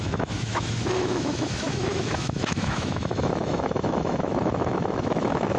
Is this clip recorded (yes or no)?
no